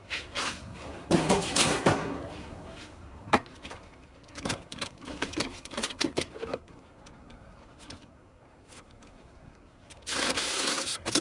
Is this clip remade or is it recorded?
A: remade